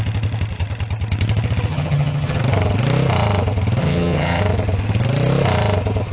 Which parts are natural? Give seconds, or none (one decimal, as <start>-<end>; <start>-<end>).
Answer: 0.0-1.7; 2.4-3.8; 4.4-6.1